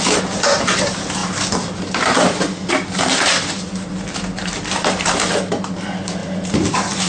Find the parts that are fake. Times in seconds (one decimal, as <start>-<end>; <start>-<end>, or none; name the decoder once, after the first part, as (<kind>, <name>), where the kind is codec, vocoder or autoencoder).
6.2-7.1 (vocoder, BigVGAN v2)